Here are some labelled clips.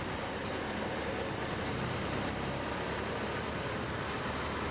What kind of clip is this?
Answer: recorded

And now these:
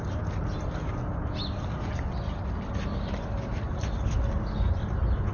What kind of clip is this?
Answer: recorded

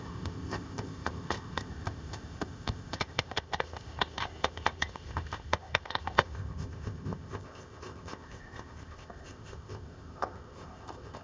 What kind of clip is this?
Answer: remade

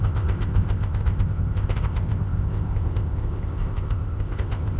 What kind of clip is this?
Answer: remade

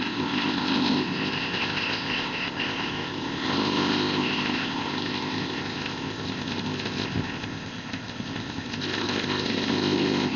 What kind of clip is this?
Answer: remade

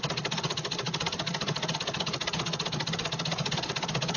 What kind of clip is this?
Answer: recorded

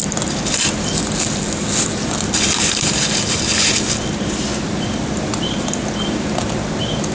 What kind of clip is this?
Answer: recorded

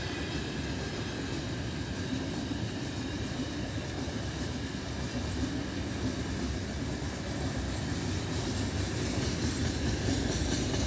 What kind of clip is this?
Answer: recorded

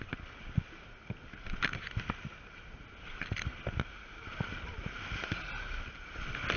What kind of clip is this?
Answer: recorded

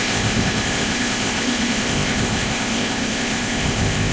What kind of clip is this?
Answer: remade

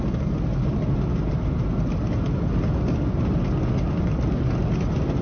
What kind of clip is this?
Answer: recorded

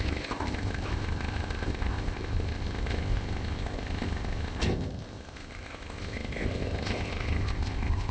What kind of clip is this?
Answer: remade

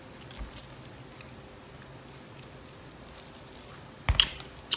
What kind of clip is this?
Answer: recorded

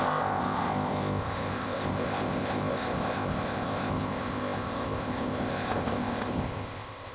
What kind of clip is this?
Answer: remade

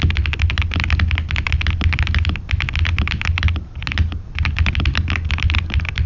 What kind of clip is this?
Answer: recorded